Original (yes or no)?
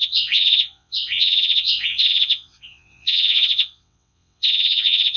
no